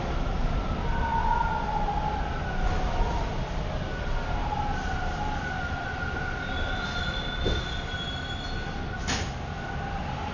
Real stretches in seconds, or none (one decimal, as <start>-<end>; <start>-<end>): 0.0-10.3

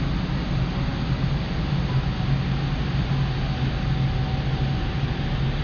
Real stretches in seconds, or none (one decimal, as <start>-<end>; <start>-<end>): 0.0-5.6

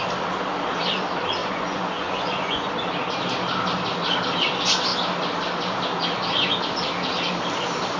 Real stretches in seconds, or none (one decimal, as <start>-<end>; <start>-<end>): 0.0-1.4; 2.7-8.0

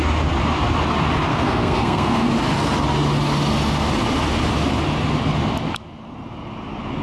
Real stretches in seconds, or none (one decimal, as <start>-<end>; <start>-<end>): 0.0-1.3; 2.3-7.0